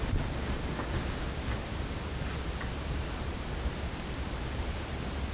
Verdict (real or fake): real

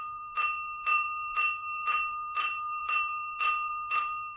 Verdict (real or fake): fake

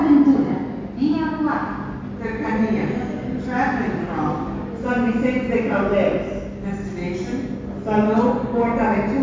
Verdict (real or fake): real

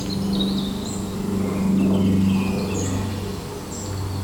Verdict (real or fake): real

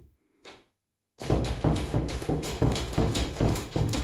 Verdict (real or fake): fake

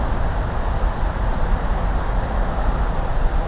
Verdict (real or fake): real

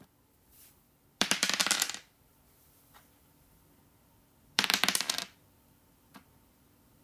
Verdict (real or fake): fake